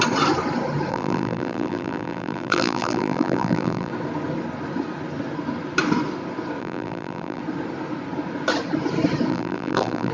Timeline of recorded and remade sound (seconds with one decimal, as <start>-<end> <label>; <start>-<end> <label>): 0.0-0.9 recorded; 0.9-3.9 remade; 3.9-6.6 recorded; 6.6-7.4 remade; 7.4-9.3 recorded; 9.3-10.1 remade